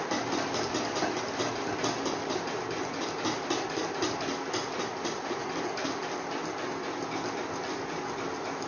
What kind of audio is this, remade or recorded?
recorded